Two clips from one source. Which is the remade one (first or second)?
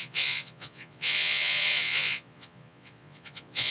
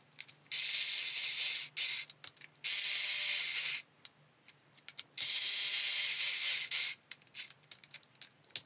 first